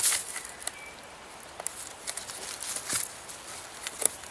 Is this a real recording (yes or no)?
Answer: yes